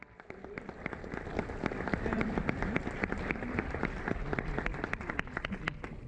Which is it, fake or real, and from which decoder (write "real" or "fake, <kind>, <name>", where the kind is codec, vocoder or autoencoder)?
fake, vocoder, BigVGAN v2